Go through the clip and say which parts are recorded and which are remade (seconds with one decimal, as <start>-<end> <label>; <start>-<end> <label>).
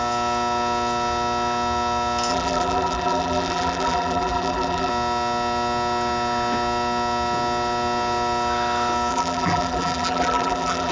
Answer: 0.0-2.3 recorded; 2.3-4.9 remade; 4.9-9.1 recorded; 9.1-10.9 remade